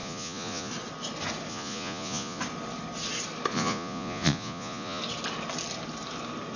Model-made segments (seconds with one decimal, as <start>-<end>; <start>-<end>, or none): 0.0-0.7; 1.5-2.4; 3.5-5.0